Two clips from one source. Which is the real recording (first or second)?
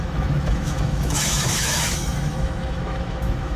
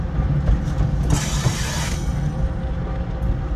second